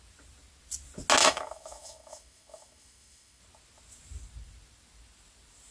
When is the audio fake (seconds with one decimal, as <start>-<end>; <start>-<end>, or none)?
1.2-3.4